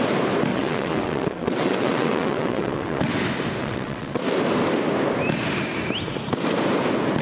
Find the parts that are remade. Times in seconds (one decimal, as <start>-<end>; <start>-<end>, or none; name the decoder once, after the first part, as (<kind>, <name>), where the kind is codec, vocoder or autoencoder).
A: 0.5-3.1 (vocoder, WaveNeXt); 3.6-4.2